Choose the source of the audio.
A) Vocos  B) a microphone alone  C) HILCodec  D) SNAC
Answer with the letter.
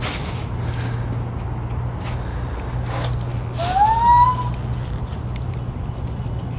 B